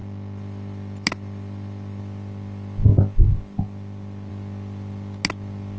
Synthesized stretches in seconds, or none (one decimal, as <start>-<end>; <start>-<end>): 0.0-2.0